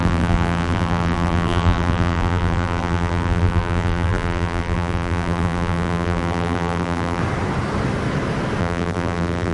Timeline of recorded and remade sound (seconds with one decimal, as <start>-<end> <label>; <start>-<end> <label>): 0.0-7.2 remade; 7.2-8.6 recorded; 8.6-9.5 remade